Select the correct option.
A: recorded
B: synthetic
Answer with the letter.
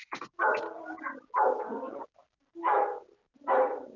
A